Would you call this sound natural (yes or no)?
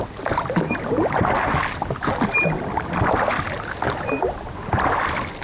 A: yes